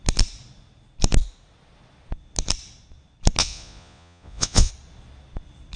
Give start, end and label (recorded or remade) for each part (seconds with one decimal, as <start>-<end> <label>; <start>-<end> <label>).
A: 0.0-3.4 recorded; 3.4-4.7 remade; 4.7-5.8 recorded